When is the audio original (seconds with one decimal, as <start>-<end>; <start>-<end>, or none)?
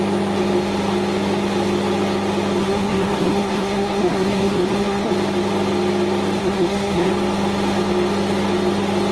0.0-2.6; 5.1-6.4; 7.1-9.1